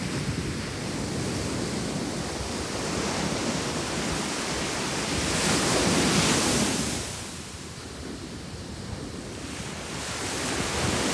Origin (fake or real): real